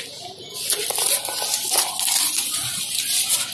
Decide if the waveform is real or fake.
real